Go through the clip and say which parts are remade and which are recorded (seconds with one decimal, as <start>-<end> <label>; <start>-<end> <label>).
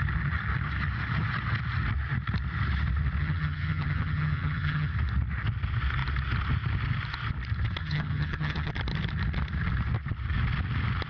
0.0-3.2 recorded; 3.2-4.9 remade; 4.9-7.8 recorded; 7.8-8.7 remade; 8.7-11.1 recorded